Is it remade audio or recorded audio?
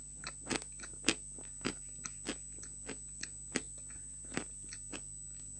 recorded